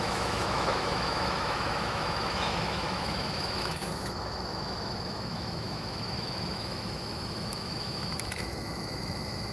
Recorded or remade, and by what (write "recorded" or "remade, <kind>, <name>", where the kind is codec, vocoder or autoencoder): remade, autoencoder, DAC-VAE